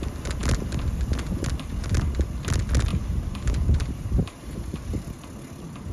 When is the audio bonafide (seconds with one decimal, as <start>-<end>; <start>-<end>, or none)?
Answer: 0.0-2.9; 4.9-5.9

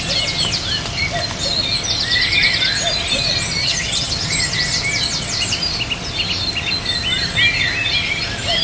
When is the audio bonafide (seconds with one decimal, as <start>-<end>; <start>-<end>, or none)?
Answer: 0.0-3.6; 4.1-8.6